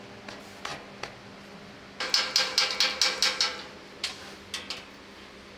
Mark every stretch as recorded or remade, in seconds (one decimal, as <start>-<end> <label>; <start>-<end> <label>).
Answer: 0.0-5.6 recorded